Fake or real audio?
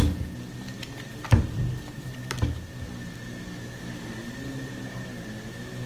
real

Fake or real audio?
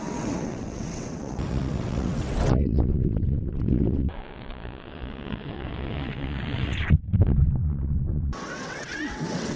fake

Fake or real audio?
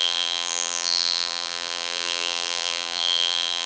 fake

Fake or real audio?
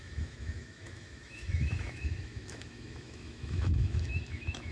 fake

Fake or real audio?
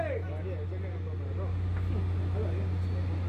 real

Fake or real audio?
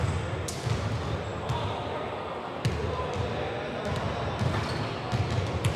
real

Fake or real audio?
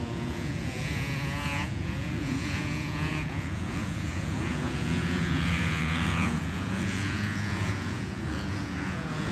fake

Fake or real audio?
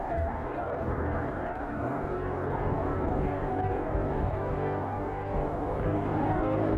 fake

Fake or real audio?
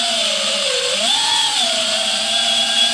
fake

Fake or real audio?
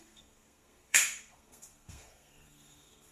fake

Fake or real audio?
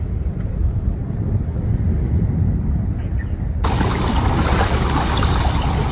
real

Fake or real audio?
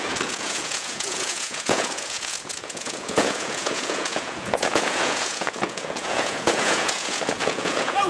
fake